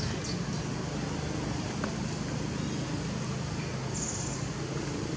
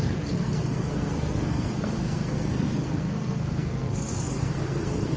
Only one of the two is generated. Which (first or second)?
second